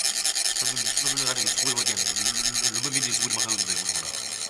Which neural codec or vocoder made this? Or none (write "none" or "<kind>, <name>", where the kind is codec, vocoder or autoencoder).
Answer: none